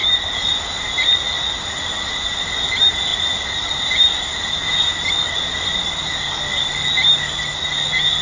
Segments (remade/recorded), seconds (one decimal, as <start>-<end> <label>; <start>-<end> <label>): 0.0-3.1 recorded; 3.1-6.6 remade; 6.6-8.2 recorded